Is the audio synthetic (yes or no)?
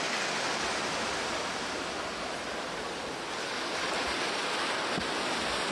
no